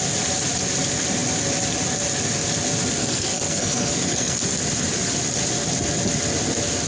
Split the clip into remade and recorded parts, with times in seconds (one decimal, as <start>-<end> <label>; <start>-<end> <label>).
0.0-3.0 recorded; 3.0-4.5 remade; 4.5-6.9 recorded